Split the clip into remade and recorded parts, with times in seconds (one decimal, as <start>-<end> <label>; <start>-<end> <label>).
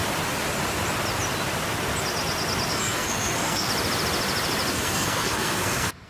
0.0-2.7 recorded; 2.7-3.7 remade; 3.7-4.7 recorded; 4.7-6.1 remade